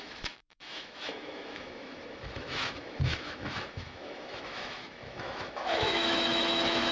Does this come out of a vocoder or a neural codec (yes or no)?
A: yes